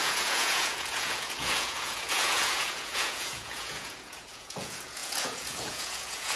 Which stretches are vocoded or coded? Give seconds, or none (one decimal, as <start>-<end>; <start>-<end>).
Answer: 0.0-6.4